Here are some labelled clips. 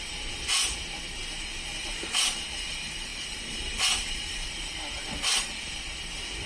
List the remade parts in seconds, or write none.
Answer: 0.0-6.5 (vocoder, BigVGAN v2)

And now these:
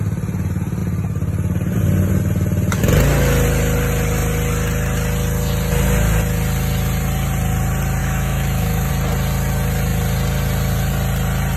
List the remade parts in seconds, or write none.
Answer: 8.0-8.9 (autoencoder, DAC-VAE)

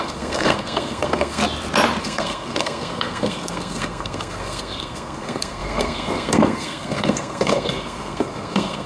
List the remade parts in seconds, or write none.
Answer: 0.0-1.4 (codec, SNAC); 2.0-8.9